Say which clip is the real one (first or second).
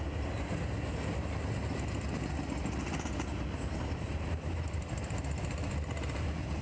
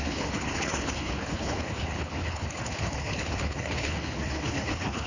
first